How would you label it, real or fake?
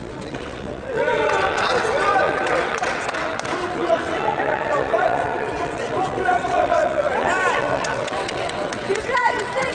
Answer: fake